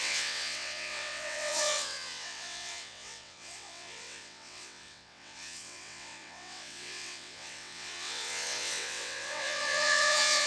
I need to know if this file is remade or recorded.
remade